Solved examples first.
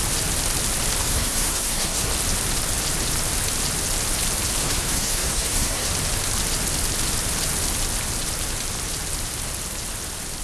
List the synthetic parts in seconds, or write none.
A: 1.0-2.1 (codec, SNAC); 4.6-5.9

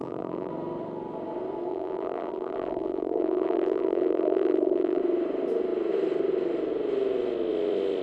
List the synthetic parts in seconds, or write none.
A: 0.0-0.5 (vocoder, BigVGAN v2); 1.7-5.0

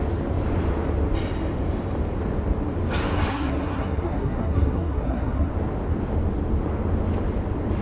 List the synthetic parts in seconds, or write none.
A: 3.3-5.5 (codec, SNAC)

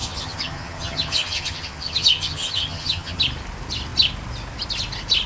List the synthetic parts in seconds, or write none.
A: 0.0-3.2 (vocoder, HiFi-GAN)

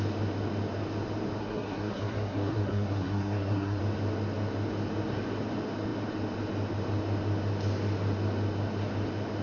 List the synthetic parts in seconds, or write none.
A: 1.4-3.8 (codec, SNAC)

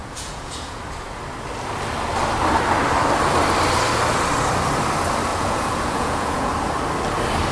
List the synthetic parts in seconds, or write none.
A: 0.0-0.8 (vocoder, Vocos); 5.3-6.5